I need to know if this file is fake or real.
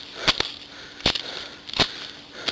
real